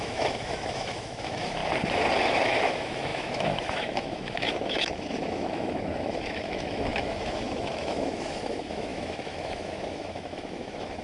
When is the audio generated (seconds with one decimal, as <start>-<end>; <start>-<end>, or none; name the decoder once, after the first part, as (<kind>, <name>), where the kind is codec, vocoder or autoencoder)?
0.0-1.6 (autoencoder, DAC-VAE); 2.2-11.0